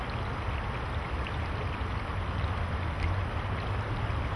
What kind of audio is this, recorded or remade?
recorded